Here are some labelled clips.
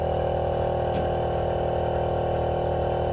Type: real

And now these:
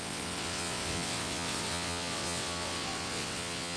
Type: fake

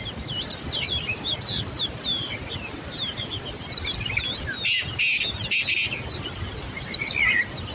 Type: real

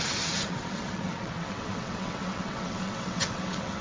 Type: fake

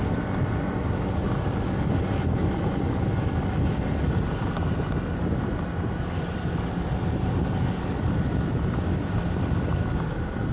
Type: real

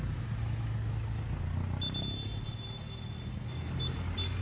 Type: real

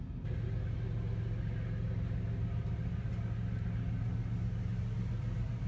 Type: real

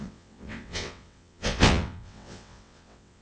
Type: fake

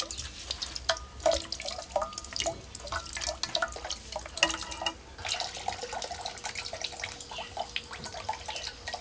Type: real